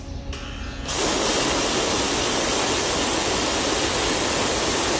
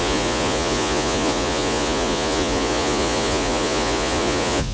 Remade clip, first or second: second